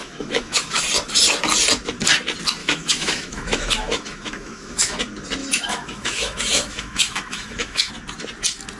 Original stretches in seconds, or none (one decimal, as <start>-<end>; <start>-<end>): 0.8-2.6; 5.0-5.4; 7.9-8.8